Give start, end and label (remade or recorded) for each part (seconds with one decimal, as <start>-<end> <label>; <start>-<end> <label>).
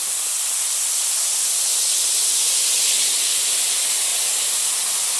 0.0-5.2 recorded